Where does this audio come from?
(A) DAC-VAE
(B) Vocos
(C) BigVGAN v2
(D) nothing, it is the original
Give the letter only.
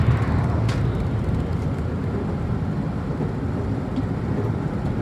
D